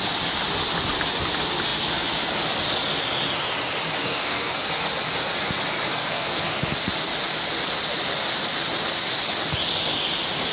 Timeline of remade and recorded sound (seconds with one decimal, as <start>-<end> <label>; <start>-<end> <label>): 0.0-4.0 recorded; 4.0-4.6 remade; 4.6-5.9 recorded; 5.9-6.5 remade; 6.5-10.5 recorded